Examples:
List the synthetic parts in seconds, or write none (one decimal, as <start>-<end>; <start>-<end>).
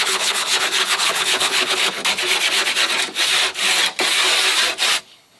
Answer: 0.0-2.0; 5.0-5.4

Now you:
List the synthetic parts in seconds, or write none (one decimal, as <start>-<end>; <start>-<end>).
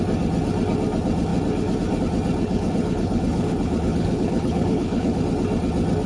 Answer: 2.4-5.2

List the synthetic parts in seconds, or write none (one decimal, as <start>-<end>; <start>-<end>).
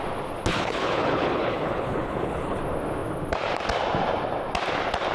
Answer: 0.5-2.6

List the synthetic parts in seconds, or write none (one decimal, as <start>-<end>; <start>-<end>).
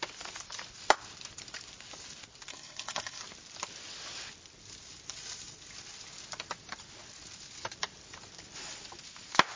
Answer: 2.5-3.2